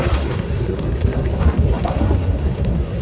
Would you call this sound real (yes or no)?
no